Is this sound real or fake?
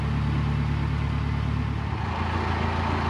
real